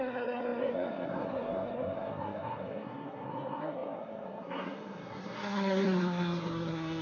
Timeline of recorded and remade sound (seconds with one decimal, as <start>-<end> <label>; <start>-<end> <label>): 0.0-7.0 remade